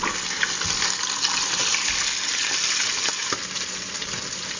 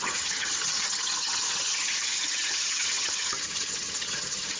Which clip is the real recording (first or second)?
first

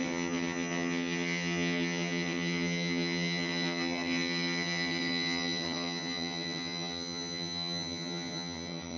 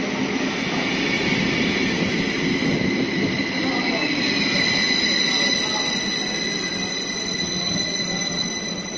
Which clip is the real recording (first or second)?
second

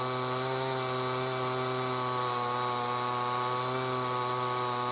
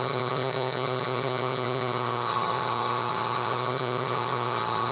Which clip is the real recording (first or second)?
first